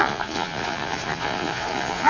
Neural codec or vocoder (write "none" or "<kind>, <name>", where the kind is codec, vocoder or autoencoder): vocoder, Vocos